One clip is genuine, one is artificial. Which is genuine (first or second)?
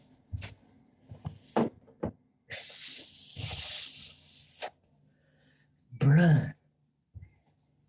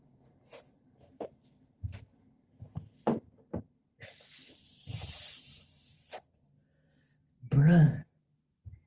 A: first